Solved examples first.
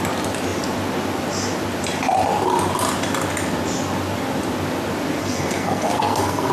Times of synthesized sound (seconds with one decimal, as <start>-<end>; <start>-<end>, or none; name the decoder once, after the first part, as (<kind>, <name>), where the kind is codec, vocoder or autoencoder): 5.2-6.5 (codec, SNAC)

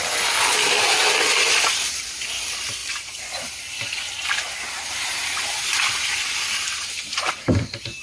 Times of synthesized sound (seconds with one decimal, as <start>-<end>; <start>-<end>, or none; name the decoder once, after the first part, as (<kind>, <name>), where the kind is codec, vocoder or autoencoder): 2.8-7.3 (vocoder, BigVGAN v2)

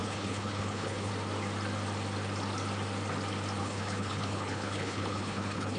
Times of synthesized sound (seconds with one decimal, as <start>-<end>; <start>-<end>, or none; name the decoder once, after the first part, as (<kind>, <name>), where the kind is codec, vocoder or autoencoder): 0.0-1.1 (codec, HILCodec); 3.6-5.8